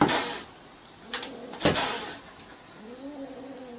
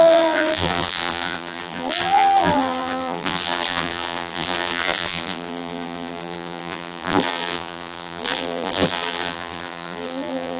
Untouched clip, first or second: first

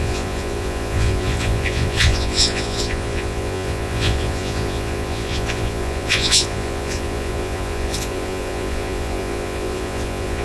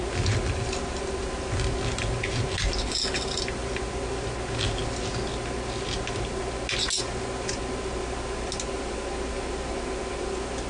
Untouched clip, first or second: second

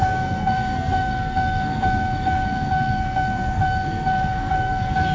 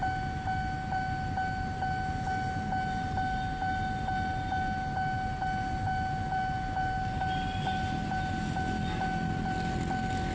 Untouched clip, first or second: second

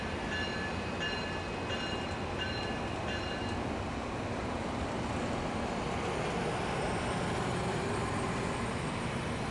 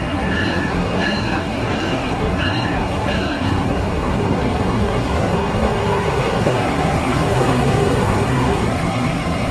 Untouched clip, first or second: first